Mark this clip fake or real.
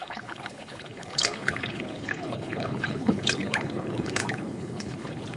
fake